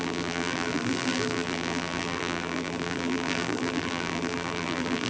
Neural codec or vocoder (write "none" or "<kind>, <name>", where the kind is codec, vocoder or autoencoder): vocoder, BigVGAN v2